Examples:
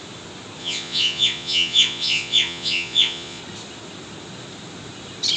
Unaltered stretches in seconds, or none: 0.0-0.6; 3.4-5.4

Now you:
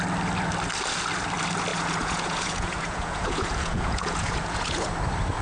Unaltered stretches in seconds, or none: 0.0-1.7; 4.9-5.4